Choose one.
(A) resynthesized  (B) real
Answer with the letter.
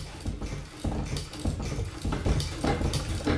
B